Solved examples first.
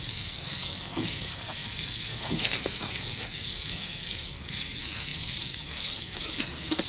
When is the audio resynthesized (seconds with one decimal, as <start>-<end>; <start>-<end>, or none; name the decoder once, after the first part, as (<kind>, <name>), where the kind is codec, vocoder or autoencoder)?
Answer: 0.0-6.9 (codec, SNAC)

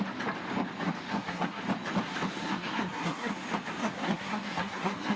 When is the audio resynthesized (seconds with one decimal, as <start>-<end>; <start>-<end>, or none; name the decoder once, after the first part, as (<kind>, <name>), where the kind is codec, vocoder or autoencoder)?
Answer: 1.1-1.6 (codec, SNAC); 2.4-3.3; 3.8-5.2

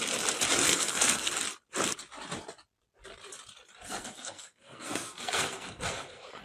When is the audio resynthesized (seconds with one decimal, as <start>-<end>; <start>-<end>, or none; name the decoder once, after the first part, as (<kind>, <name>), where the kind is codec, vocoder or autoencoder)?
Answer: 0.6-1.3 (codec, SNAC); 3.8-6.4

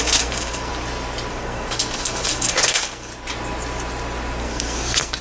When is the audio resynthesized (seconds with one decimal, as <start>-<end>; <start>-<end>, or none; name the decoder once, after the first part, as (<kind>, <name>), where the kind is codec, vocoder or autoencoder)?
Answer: 0.0-0.7 (codec, SNAC); 1.3-3.1; 4.4-5.2

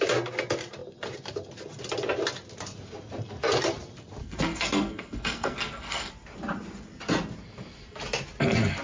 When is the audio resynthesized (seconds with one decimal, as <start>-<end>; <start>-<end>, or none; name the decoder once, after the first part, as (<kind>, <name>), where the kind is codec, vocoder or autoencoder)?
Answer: 4.2-6.1 (codec, SNAC)